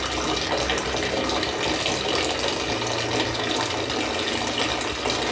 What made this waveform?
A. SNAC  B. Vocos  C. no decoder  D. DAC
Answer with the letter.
C